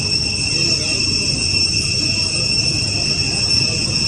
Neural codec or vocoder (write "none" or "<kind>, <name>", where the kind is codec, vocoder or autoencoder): none